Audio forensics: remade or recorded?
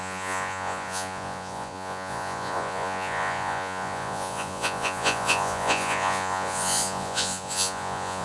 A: remade